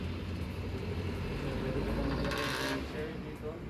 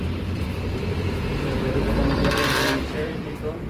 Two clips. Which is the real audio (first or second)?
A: first